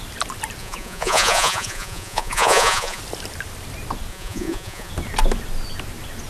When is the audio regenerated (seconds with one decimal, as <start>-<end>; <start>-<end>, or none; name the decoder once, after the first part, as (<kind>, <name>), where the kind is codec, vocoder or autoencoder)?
0.6-3.0 (vocoder, Vocos); 4.1-4.9